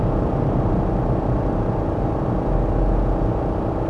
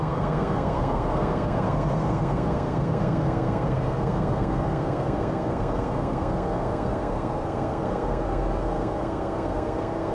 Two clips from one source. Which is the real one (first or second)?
first